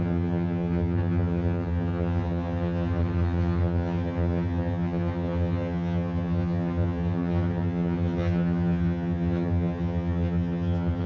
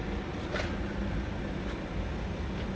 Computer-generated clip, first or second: first